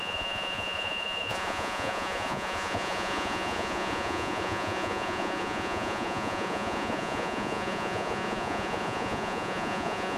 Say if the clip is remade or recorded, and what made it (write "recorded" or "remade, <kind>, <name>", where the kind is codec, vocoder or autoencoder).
remade, vocoder, Vocos